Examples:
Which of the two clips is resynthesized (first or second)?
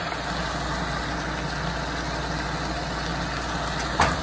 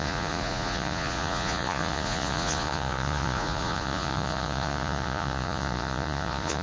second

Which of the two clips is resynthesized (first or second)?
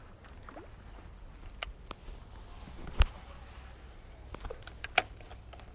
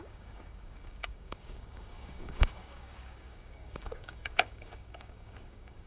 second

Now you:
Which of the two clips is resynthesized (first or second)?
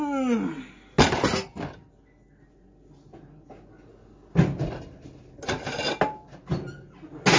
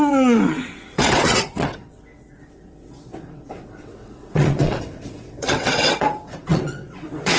second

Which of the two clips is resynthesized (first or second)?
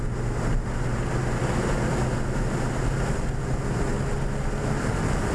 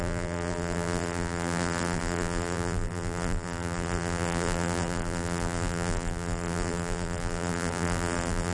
second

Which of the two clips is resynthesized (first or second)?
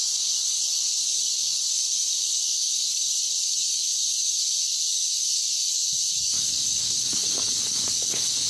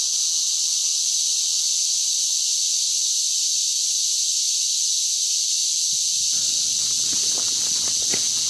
first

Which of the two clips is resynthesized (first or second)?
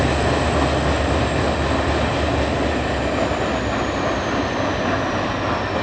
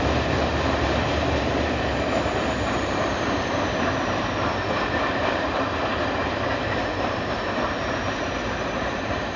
second